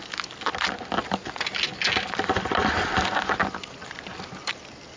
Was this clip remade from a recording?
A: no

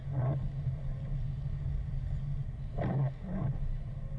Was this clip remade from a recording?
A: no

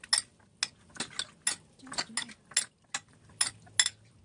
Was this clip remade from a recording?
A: no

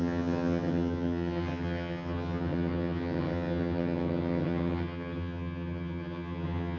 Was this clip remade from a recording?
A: yes